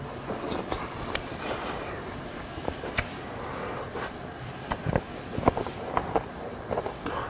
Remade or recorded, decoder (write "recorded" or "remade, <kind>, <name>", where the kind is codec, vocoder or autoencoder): remade, vocoder, BigVGAN v2